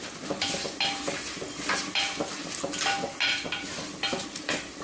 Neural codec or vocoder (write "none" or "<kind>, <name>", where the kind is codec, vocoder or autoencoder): none